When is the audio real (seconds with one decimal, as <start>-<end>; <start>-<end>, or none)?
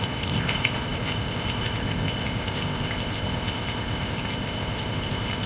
none